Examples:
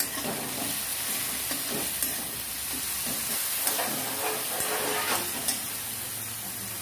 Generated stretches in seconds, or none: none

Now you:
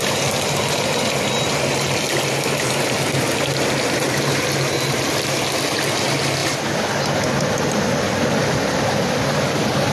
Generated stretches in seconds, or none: none

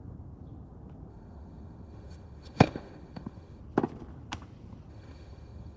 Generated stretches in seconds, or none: 1.1-3.6 (autoencoder, DAC-VAE); 4.9-5.8